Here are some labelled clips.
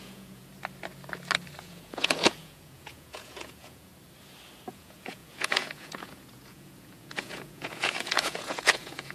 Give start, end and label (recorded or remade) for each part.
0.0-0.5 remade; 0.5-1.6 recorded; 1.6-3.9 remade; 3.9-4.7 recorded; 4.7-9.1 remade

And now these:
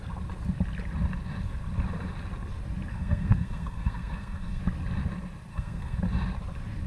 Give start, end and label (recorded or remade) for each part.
0.0-2.9 recorded; 2.9-4.6 remade; 4.6-5.5 recorded; 5.5-6.0 remade; 6.0-6.9 recorded

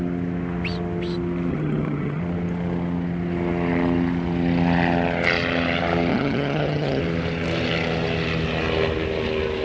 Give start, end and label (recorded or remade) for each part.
0.0-1.5 recorded; 1.5-2.2 remade; 2.2-6.1 recorded; 6.1-7.0 remade; 7.0-9.6 recorded

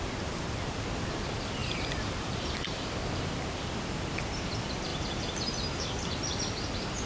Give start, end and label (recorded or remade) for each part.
0.0-1.6 recorded; 1.6-2.9 remade; 2.9-4.9 recorded; 4.9-6.4 remade; 6.4-7.1 recorded

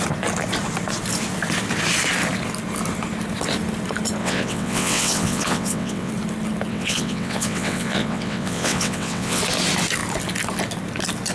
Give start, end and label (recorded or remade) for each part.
0.0-4.2 recorded; 4.2-6.1 remade; 6.1-6.7 recorded; 6.7-9.4 remade; 9.4-11.3 recorded

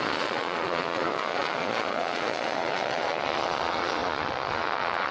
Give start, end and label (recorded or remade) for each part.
0.0-5.1 remade